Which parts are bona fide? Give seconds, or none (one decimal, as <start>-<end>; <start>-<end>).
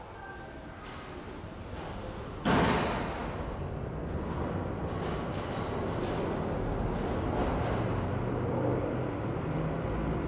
0.0-10.3